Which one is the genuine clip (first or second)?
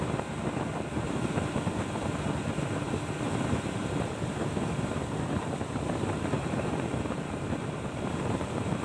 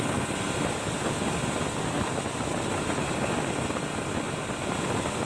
second